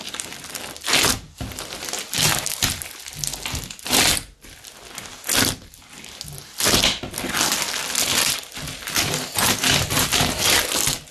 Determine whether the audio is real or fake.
real